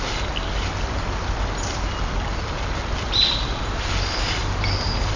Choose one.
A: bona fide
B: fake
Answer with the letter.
A